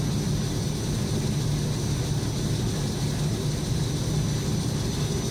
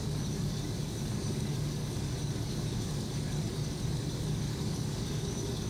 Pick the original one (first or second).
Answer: first